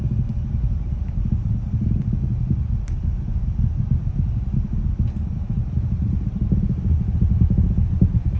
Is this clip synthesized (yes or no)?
yes